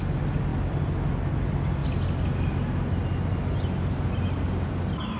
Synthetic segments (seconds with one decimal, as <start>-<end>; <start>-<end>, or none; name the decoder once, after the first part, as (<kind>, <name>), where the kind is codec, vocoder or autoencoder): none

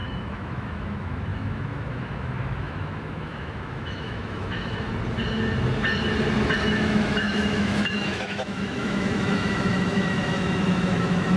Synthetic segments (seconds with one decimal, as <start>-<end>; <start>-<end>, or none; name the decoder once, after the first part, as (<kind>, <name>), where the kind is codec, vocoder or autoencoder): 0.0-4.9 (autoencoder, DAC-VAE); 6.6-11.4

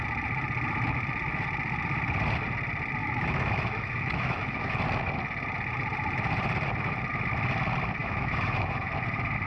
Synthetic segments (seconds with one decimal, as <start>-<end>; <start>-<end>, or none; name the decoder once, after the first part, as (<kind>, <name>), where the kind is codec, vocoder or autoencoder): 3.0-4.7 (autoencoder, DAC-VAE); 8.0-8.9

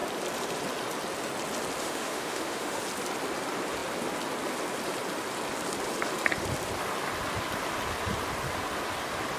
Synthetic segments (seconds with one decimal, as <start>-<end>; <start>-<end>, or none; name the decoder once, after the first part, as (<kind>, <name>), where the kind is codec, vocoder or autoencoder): 1.8-2.8 (autoencoder, DAC-VAE)

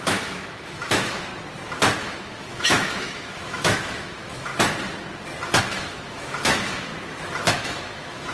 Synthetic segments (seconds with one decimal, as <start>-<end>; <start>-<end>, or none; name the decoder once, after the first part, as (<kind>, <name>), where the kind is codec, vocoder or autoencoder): 0.0-1.3 (autoencoder, DAC-VAE); 2.1-4.5; 5.6-6.9; 7.5-8.3

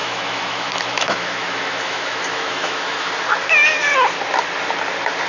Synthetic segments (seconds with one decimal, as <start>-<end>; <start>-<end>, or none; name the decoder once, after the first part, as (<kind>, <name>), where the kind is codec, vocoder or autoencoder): 0.0-3.1 (autoencoder, DAC-VAE)